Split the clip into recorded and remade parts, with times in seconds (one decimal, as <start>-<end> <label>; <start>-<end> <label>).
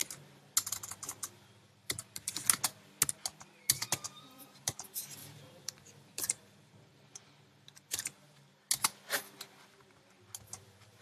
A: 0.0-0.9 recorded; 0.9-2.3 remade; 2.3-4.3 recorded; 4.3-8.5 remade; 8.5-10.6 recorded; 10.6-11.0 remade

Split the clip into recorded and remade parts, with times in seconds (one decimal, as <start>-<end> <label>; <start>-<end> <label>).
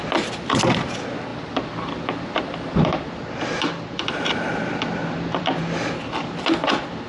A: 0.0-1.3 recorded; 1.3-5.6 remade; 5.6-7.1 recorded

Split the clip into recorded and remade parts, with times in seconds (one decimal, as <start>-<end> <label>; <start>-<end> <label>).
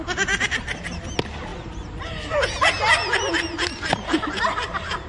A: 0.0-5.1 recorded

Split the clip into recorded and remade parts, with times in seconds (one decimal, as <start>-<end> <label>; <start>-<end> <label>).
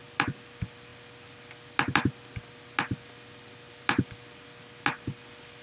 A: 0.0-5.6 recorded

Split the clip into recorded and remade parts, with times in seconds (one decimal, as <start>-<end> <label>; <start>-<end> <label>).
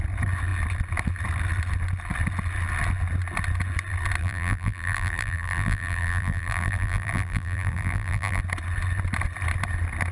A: 0.0-4.2 recorded; 4.2-8.4 remade; 8.4-10.1 recorded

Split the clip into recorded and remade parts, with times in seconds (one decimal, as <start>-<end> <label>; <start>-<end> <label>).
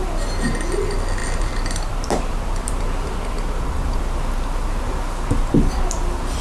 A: 0.0-1.2 recorded; 1.2-4.0 remade; 4.0-6.4 recorded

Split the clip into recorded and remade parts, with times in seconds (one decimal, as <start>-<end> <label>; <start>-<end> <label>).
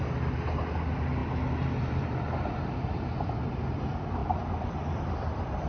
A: 0.0-1.2 recorded; 1.2-3.8 remade; 3.8-5.7 recorded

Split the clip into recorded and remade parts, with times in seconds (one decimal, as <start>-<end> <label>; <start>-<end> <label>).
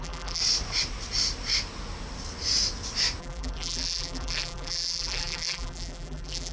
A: 0.0-0.4 remade; 0.4-3.2 recorded; 3.2-6.5 remade